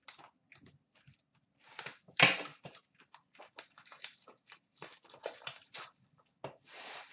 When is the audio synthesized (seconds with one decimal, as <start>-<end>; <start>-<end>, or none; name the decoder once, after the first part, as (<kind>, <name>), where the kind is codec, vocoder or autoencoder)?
2.5-3.0 (vocoder, BigVGAN v2)